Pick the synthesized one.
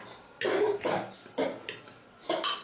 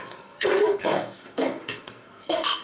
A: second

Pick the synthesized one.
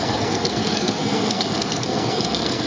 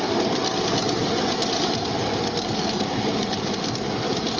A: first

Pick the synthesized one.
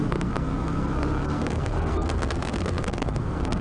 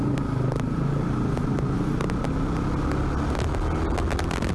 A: first